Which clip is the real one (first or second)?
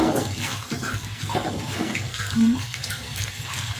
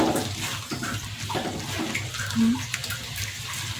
second